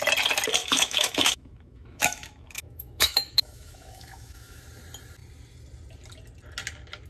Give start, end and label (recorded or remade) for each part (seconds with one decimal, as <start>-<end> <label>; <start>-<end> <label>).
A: 0.0-0.6 recorded; 0.6-4.6 remade; 4.6-7.1 recorded